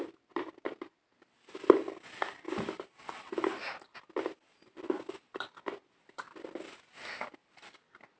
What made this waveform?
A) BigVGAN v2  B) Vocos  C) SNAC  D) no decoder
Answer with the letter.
A